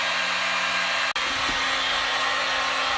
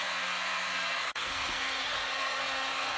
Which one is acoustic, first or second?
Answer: first